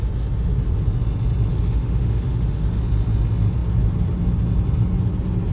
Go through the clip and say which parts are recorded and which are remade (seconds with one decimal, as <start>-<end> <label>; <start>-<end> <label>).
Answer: 0.0-1.5 recorded; 1.5-2.8 remade; 2.8-5.5 recorded